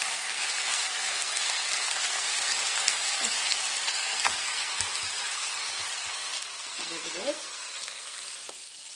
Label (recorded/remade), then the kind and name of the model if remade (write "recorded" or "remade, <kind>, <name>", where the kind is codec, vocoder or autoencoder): remade, codec, SNAC